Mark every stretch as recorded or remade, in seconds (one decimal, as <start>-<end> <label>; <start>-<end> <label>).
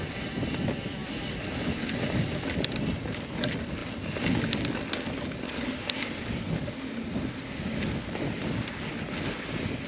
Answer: 0.0-9.9 recorded